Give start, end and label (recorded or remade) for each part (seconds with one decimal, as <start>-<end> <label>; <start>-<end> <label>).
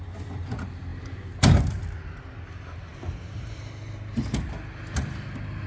0.0-0.9 recorded; 0.9-2.0 remade; 2.0-5.7 recorded